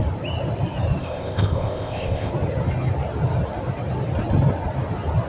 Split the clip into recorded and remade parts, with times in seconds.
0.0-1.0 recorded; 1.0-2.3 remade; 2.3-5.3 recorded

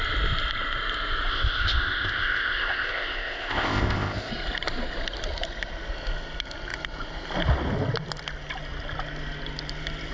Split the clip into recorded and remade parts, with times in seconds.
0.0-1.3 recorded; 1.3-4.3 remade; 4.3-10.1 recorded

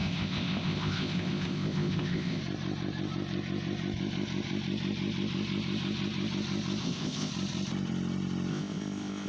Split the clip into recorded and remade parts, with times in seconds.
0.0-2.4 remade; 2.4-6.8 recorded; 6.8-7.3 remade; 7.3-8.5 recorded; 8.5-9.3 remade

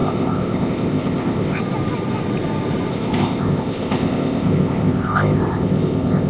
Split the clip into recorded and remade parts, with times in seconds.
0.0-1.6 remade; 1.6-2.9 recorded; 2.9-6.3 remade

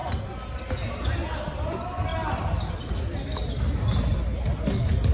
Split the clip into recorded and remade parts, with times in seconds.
0.0-5.1 recorded